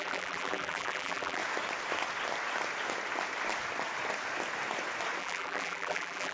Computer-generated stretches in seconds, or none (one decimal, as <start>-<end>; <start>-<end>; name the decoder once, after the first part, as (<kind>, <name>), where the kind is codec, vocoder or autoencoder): 0.0-1.4 (vocoder, BigVGAN v2); 5.2-6.3